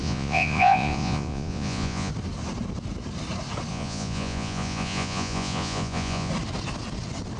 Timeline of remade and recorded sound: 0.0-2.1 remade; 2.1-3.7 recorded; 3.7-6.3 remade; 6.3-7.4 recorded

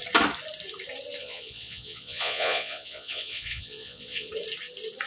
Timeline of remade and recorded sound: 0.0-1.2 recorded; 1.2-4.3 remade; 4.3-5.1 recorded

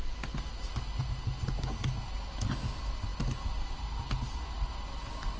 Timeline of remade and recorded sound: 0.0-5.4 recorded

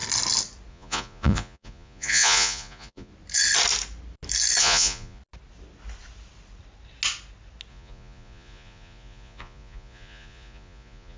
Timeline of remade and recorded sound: 0.0-0.7 recorded; 0.7-3.1 remade; 3.1-4.6 recorded; 4.6-5.2 remade; 5.2-7.7 recorded; 7.7-11.2 remade

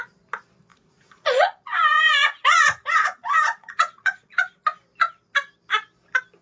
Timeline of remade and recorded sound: 0.0-0.7 recorded; 0.7-4.5 remade; 4.5-6.4 recorded

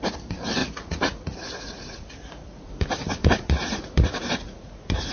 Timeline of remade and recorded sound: 0.0-0.6 recorded; 0.6-2.7 remade; 2.7-3.2 recorded; 3.2-5.1 remade